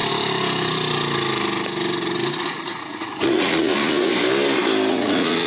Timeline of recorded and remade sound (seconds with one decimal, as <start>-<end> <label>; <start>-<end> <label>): 0.0-2.6 recorded; 2.6-4.1 remade; 4.1-4.9 recorded; 4.9-5.5 remade